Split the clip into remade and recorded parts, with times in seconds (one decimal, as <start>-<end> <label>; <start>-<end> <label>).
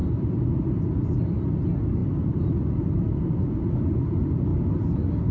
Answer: 0.0-0.7 remade; 0.7-2.0 recorded; 2.0-3.5 remade; 3.5-5.3 recorded